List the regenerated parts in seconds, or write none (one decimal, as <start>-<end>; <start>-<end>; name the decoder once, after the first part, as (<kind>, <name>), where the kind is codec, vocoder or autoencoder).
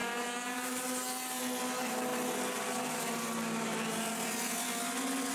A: 0.0-0.8 (codec, DAC)